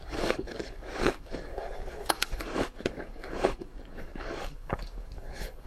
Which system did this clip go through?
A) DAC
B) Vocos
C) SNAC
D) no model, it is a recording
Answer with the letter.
A